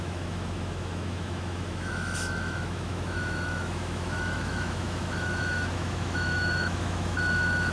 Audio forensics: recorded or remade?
remade